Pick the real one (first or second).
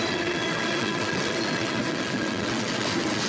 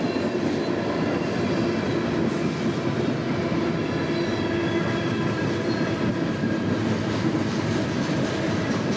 second